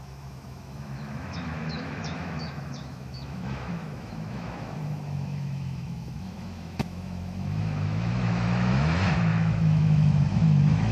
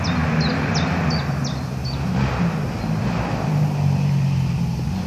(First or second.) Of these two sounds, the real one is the second